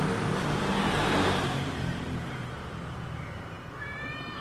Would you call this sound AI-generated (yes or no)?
yes